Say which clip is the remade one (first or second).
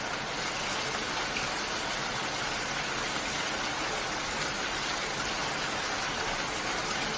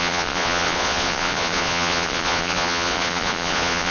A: second